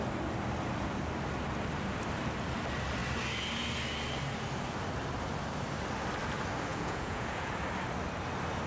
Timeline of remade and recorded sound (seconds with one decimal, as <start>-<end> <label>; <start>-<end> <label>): 0.0-6.7 recorded; 6.7-7.5 remade; 7.5-8.7 recorded